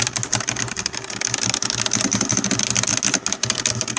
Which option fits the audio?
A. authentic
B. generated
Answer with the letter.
A